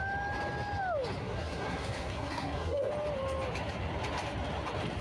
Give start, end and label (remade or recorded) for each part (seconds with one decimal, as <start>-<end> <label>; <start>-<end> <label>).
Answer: 0.0-1.2 recorded; 1.2-2.9 remade; 2.9-5.0 recorded